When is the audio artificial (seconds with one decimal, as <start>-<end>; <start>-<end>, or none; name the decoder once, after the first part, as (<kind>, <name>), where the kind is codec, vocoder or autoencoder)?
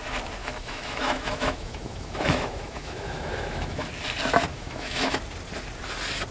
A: 0.4-3.9 (autoencoder, DAC-VAE); 4.5-5.2